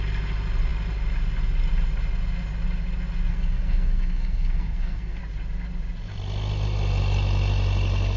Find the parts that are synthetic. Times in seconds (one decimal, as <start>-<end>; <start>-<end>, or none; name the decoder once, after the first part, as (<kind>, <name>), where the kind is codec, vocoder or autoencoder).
3.3-5.2 (codec, SNAC)